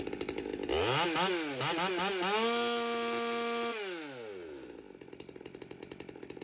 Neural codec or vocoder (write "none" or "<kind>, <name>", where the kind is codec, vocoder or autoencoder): none